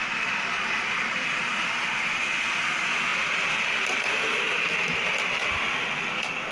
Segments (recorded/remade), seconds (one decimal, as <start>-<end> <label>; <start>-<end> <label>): 0.0-6.5 recorded